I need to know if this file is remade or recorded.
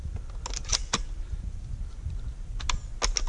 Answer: recorded